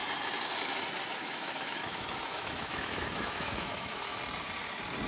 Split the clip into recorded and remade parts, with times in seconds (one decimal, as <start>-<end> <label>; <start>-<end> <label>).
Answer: 0.0-1.1 recorded; 1.1-4.2 remade; 4.2-5.1 recorded